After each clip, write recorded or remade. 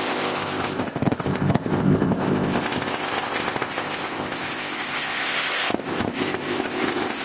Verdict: remade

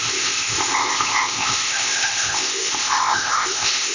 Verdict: remade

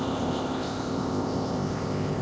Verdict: remade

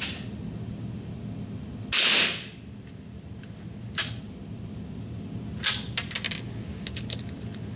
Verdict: recorded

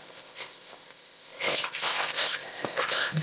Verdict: remade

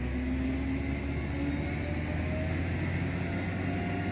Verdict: recorded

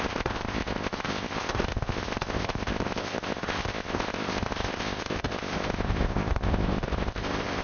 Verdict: remade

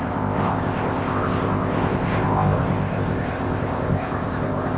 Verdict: remade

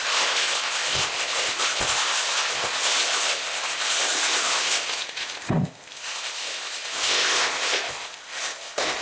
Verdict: remade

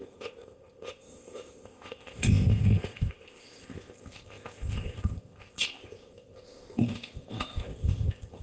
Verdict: remade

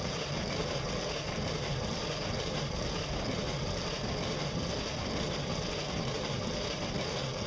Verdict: recorded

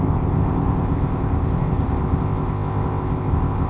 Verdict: remade